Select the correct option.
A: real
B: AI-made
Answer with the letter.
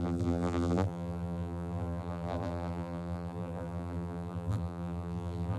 B